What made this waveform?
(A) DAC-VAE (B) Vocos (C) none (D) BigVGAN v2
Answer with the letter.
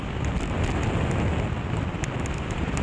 C